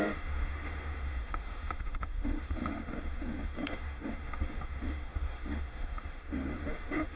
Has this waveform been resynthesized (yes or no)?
yes